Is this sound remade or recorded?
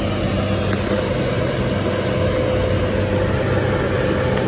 recorded